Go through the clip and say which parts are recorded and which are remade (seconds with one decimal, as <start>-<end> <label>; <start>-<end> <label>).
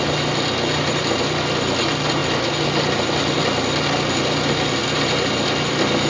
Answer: 0.0-6.1 recorded